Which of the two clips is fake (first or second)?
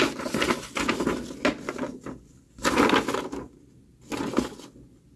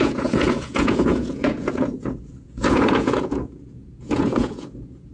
second